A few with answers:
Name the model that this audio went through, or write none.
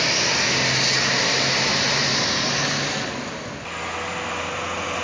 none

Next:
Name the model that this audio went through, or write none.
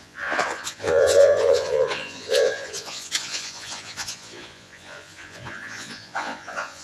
vocoder, Vocos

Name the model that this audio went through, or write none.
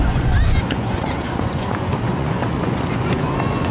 vocoder, Vocos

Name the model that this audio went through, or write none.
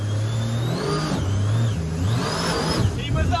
none